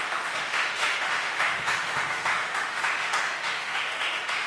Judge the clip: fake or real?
fake